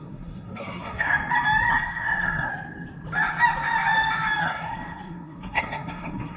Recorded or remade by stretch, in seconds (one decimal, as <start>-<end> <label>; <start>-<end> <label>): 0.0-1.1 remade; 1.1-1.7 recorded; 1.7-2.5 remade; 2.5-4.4 recorded; 4.4-6.4 remade